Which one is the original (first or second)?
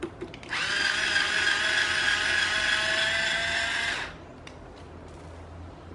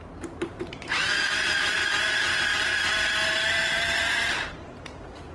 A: first